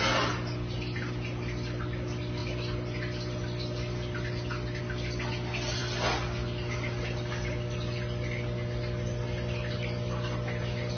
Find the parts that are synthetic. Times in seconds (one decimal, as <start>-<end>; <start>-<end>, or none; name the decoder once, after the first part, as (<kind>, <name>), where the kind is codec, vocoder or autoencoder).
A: none